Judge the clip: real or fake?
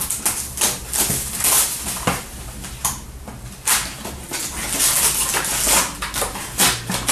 real